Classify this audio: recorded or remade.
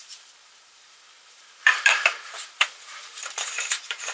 remade